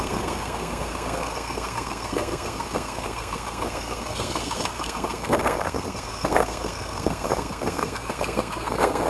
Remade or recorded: remade